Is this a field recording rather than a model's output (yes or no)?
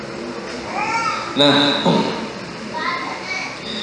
yes